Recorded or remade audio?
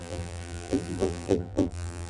remade